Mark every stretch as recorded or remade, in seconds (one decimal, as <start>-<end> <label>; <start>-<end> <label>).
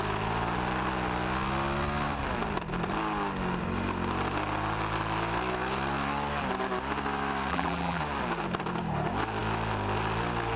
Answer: 0.0-7.5 recorded; 7.5-8.0 remade; 8.0-10.6 recorded